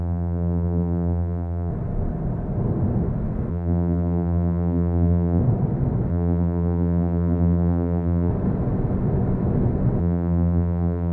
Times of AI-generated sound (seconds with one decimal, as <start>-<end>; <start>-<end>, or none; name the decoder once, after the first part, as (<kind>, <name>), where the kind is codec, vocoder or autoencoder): 0.0-1.7 (vocoder, BigVGAN v2); 3.5-5.4; 6.1-8.3; 10.0-11.1